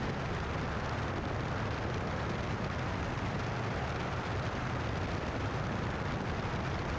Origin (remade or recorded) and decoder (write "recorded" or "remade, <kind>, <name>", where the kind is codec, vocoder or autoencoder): recorded